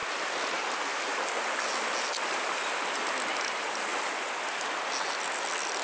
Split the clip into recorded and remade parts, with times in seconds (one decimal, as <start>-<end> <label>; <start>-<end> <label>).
0.0-5.8 recorded